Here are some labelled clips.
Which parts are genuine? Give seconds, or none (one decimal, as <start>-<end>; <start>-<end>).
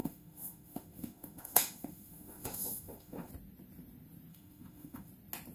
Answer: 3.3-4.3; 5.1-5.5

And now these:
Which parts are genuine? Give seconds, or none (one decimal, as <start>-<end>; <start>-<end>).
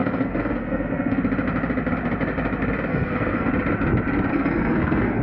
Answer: 1.2-2.9; 3.5-4.3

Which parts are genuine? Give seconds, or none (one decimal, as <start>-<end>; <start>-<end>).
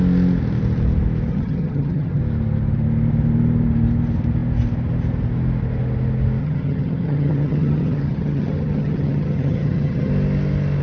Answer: 0.0-1.3; 2.2-6.4; 10.1-10.8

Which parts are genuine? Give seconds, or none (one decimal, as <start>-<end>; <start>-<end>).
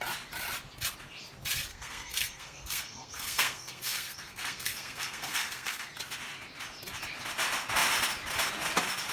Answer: 0.0-1.7; 5.9-9.1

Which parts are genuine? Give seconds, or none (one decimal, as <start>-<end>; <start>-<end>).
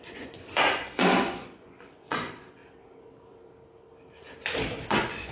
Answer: 2.6-4.8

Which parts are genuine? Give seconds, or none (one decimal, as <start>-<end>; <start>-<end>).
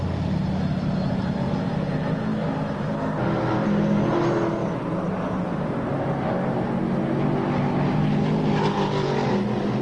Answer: 0.0-9.8